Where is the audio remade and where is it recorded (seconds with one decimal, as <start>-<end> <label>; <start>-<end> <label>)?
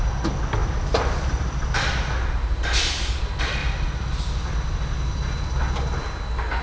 0.0-0.6 recorded; 0.6-3.2 remade; 3.2-3.6 recorded; 3.6-5.3 remade; 5.3-6.6 recorded